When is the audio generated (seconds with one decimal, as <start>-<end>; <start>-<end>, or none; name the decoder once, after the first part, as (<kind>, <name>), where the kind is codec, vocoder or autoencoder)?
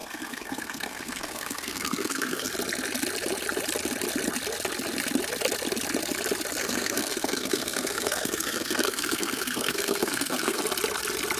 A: 0.0-2.5 (codec, SNAC); 6.6-10.6